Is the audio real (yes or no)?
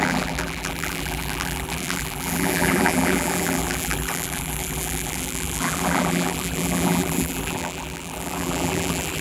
no